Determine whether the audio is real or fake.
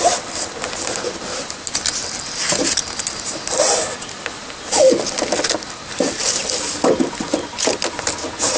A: real